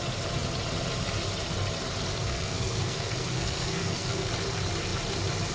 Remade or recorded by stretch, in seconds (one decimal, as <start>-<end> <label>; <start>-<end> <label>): 0.0-2.1 recorded; 2.1-4.3 remade; 4.3-5.5 recorded

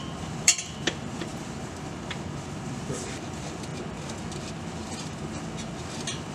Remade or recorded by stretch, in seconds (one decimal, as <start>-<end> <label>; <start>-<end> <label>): 0.0-3.7 remade; 3.7-6.3 recorded

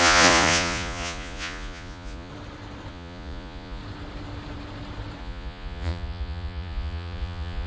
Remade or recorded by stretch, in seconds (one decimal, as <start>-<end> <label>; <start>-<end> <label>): 0.0-2.3 remade; 2.3-2.9 recorded; 2.9-3.8 remade; 3.8-5.2 recorded; 5.2-7.7 remade

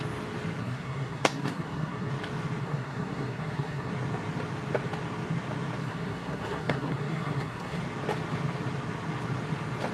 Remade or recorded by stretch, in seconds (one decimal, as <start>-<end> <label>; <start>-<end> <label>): 0.0-0.6 recorded; 0.6-2.1 remade; 2.1-2.6 recorded; 2.6-3.9 remade; 3.9-5.8 recorded; 5.8-7.8 remade; 7.8-9.9 recorded

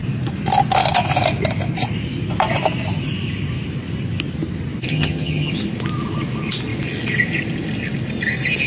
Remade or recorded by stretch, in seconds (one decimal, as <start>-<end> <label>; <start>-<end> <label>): 0.0-4.9 recorded; 4.9-5.5 remade; 5.5-8.7 recorded